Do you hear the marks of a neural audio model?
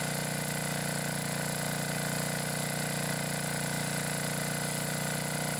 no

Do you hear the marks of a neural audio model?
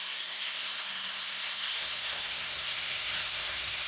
yes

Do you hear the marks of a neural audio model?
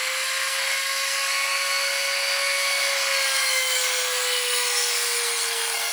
yes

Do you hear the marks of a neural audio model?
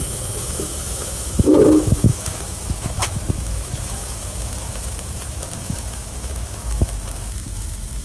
yes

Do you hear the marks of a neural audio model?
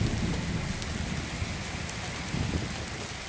no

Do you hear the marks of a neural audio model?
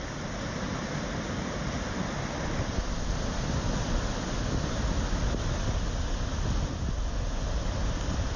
no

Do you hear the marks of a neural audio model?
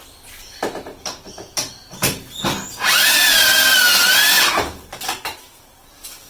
no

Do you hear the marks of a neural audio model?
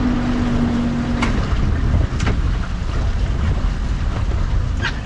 no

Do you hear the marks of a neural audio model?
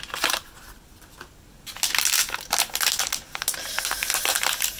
no